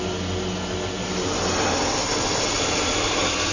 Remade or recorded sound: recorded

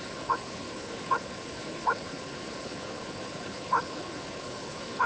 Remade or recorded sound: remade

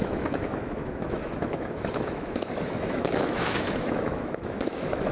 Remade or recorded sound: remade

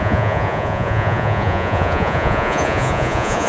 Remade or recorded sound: remade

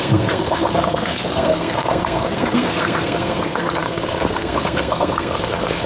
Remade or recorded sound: remade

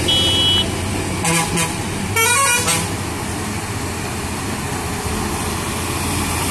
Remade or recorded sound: recorded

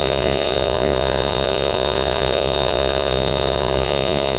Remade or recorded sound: remade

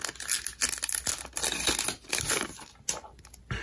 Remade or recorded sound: recorded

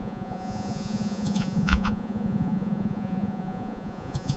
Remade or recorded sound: remade